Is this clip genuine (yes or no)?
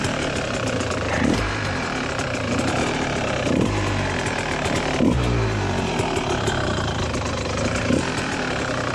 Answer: no